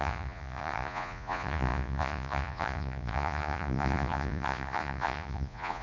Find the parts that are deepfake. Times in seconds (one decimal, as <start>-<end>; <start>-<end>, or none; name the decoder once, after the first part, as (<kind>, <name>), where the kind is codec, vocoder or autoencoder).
0.0-5.8 (vocoder, Vocos)